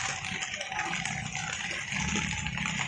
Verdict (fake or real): real